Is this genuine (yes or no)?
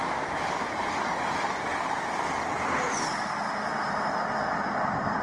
yes